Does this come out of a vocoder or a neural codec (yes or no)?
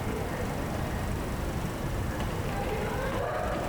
no